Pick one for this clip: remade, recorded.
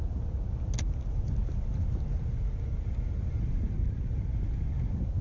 recorded